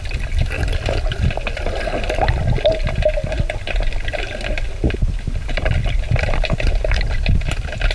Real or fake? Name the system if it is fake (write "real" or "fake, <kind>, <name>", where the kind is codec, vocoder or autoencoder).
real